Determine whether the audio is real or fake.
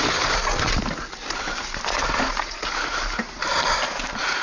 real